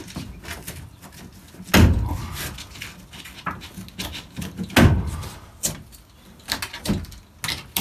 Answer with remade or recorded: recorded